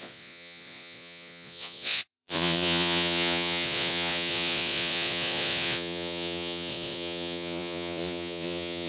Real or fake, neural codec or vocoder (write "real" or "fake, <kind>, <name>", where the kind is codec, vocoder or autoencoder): fake, vocoder, Vocos